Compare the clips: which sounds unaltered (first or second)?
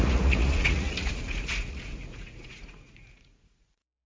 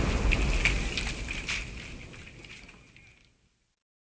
second